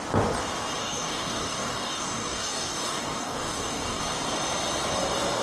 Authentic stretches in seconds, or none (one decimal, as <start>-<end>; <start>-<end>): 0.0-0.8; 4.0-5.4

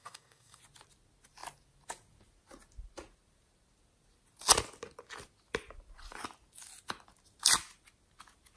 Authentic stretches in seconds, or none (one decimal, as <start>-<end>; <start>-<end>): 0.6-8.6

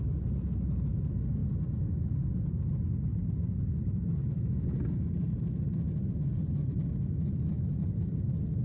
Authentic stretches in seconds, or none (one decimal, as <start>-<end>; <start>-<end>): 0.0-8.6